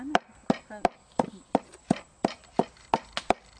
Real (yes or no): yes